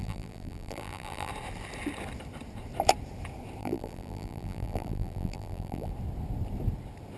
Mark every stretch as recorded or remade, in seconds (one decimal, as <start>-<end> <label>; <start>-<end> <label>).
0.0-1.3 remade; 1.3-3.6 recorded; 3.6-5.9 remade; 5.9-7.2 recorded